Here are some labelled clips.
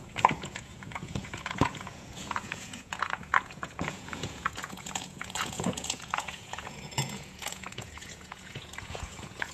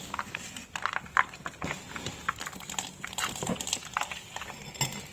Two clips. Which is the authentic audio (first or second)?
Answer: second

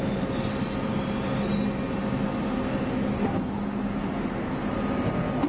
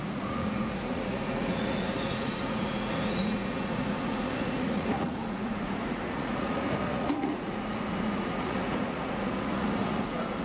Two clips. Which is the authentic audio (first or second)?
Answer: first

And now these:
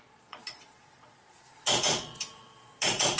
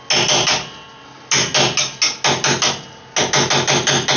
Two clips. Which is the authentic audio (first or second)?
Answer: second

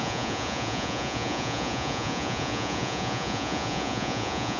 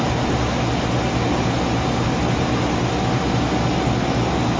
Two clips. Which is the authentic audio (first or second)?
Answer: second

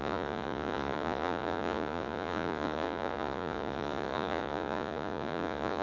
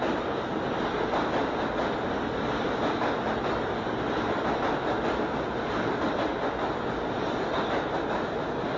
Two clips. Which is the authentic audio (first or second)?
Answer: second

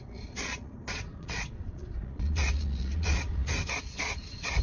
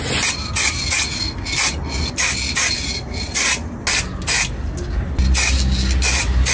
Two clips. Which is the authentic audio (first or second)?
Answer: second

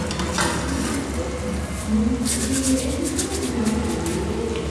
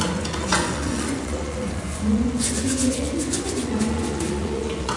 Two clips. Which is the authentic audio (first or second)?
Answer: first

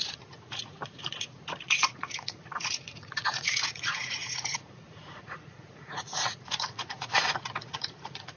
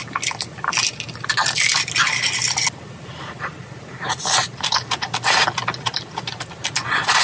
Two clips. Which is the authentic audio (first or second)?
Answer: second